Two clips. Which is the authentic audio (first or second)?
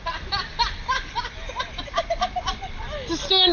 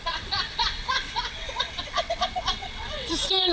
first